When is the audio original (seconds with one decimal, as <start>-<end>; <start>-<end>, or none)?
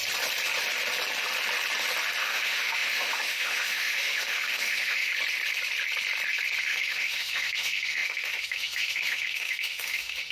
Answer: 0.0-2.2; 5.1-6.6